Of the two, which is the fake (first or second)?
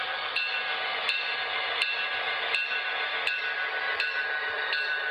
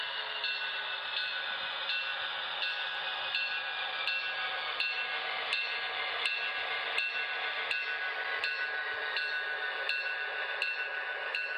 first